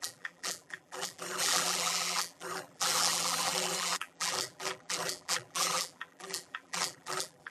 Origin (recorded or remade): remade